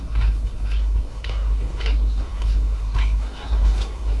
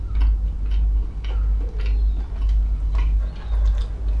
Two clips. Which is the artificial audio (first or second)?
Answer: first